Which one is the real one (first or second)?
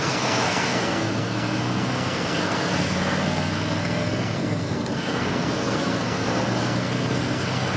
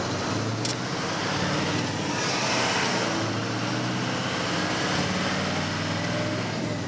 second